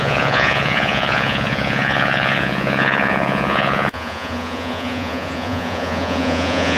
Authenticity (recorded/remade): remade